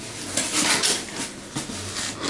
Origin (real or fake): real